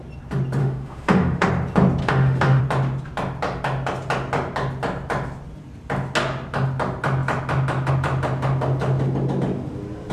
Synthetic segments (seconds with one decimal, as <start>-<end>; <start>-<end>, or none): 0.6-1.5; 2.0-2.6